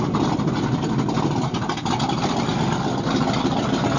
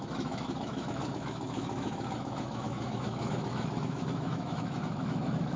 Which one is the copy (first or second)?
second